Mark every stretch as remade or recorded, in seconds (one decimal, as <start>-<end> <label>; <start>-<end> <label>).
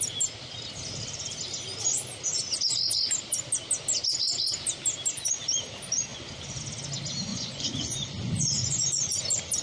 0.0-6.1 recorded; 6.1-6.6 remade; 6.6-7.3 recorded; 7.3-9.2 remade; 9.2-9.6 recorded